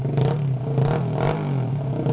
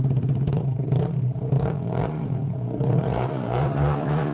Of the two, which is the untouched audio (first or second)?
first